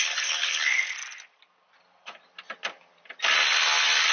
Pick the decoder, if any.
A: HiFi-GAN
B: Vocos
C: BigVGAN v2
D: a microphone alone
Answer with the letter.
D